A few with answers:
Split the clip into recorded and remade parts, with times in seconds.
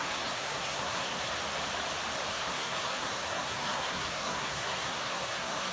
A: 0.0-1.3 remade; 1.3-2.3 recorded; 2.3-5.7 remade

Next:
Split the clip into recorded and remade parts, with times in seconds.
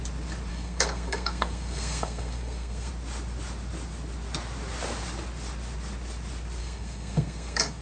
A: 0.0-0.5 recorded; 0.5-2.9 remade; 2.9-6.6 recorded; 6.6-7.8 remade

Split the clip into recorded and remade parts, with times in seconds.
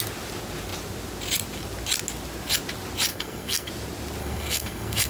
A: 0.0-3.1 recorded; 3.1-3.7 remade; 3.7-4.2 recorded; 4.2-5.1 remade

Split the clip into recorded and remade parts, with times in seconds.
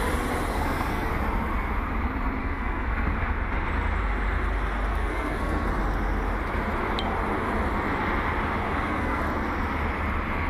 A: 0.0-0.5 recorded; 0.5-1.1 remade; 1.1-2.4 recorded; 2.4-3.3 remade; 3.3-4.9 recorded; 4.9-5.7 remade; 5.7-8.6 recorded; 8.6-9.2 remade; 9.2-10.5 recorded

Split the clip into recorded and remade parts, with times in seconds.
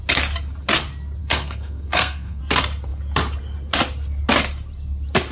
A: 0.0-1.2 recorded; 1.2-2.4 remade; 2.4-5.3 recorded